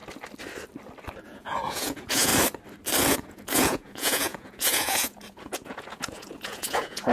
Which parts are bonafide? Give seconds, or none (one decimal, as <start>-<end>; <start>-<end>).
0.0-1.2; 2.3-3.0